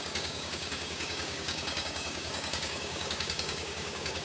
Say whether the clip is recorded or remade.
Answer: remade